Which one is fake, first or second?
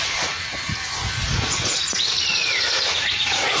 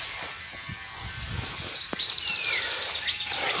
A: first